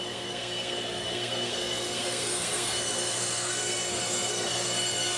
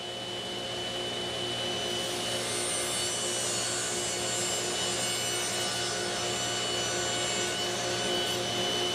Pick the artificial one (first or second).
first